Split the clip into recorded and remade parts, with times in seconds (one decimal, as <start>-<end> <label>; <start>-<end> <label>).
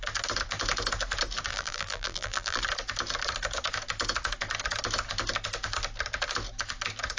0.0-1.5 recorded; 1.5-2.6 remade; 2.6-7.2 recorded